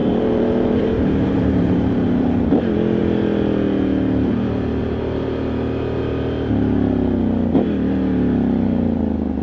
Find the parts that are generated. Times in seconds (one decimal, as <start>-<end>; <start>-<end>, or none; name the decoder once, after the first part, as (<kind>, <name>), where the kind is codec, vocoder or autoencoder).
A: 0.0-2.6 (vocoder, BigVGAN v2)